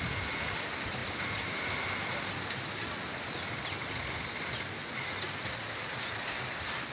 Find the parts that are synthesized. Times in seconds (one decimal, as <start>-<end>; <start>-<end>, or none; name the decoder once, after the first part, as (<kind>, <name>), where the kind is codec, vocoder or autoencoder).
none